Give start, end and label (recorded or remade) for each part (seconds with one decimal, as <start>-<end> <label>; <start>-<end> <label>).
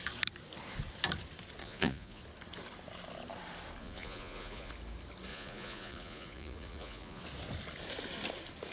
0.0-1.6 recorded; 1.6-2.2 remade; 2.2-3.8 recorded; 3.8-4.7 remade; 4.7-5.3 recorded; 5.3-7.2 remade; 7.2-8.7 recorded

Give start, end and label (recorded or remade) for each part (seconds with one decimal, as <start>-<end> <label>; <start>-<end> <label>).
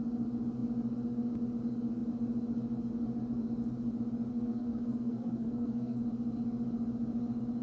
0.0-4.3 recorded; 4.3-6.0 remade; 6.0-7.6 recorded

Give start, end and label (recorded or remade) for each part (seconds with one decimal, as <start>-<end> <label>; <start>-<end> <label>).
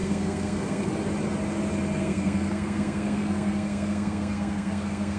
0.0-0.9 remade; 0.9-2.0 recorded; 2.0-5.2 remade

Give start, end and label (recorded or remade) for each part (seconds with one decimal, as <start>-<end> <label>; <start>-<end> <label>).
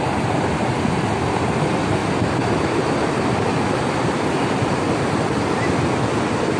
0.0-6.6 recorded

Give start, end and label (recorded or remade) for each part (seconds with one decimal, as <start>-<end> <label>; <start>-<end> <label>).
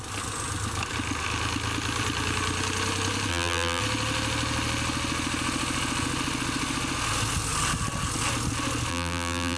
0.0-3.3 recorded; 3.3-3.8 remade; 3.8-8.9 recorded; 8.9-9.6 remade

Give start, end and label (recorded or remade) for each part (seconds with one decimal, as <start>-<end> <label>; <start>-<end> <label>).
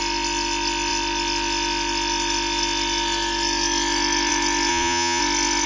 0.0-4.7 recorded; 4.7-5.2 remade; 5.2-5.7 recorded